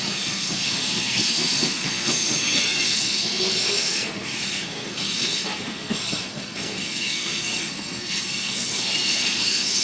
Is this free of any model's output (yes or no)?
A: no